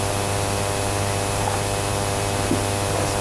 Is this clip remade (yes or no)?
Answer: no